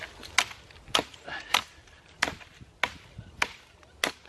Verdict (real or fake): real